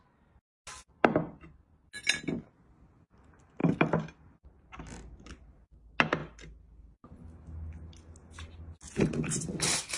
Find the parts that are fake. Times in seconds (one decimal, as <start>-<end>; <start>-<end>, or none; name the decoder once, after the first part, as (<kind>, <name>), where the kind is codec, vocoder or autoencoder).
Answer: 3.6-4.5 (vocoder, BigVGAN v2)